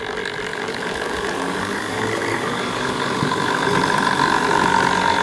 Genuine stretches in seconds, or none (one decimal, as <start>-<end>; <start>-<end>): 0.0-0.5; 3.6-5.2